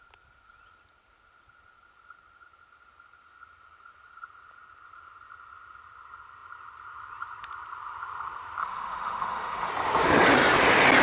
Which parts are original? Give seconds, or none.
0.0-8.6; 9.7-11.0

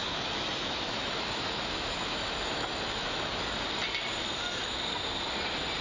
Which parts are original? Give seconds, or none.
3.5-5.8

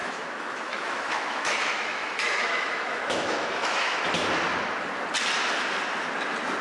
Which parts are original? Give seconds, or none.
4.0-6.6